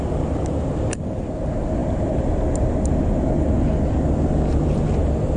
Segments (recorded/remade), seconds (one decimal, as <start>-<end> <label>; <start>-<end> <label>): 0.0-5.4 recorded